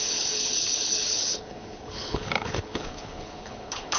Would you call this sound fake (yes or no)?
yes